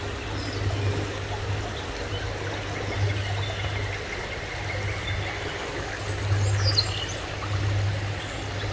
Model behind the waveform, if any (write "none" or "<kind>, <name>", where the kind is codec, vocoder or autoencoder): none